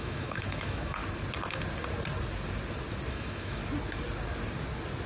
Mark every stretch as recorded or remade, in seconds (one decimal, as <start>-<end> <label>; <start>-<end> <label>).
0.0-1.0 remade; 1.0-3.1 recorded; 3.1-3.6 remade; 3.6-5.1 recorded